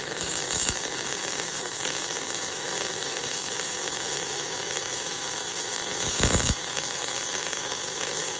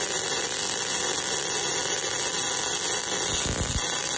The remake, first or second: first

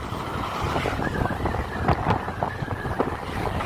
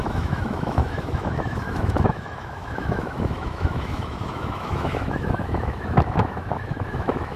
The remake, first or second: second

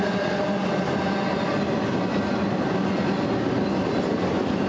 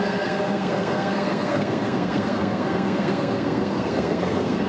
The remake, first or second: second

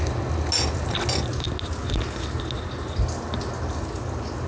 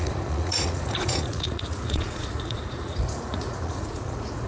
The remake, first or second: second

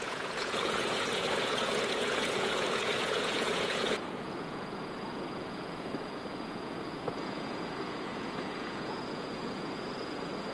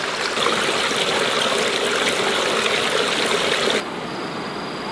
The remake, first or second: first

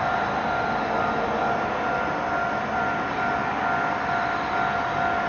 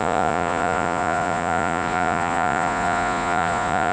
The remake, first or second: second